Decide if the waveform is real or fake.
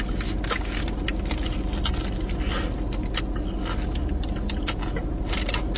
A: real